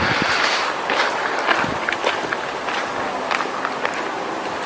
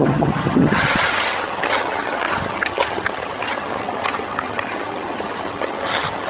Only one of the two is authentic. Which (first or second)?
first